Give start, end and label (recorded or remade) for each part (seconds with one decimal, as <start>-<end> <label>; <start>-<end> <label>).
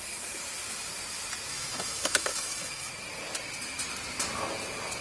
0.0-1.5 recorded; 1.5-2.9 remade; 2.9-5.0 recorded